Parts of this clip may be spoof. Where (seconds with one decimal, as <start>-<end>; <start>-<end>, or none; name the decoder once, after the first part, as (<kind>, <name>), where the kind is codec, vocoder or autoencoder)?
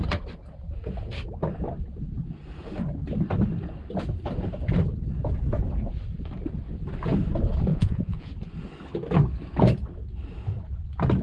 7.7-8.3 (vocoder, Vocos)